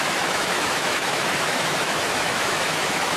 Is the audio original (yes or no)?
no